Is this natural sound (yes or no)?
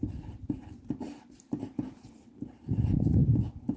no